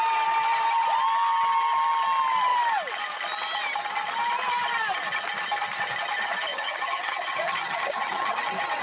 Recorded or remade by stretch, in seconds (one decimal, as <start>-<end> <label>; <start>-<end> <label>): 0.0-6.5 recorded; 6.5-8.4 remade; 8.4-8.8 recorded